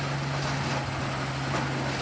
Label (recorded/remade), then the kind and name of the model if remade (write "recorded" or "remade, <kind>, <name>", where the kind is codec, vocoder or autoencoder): recorded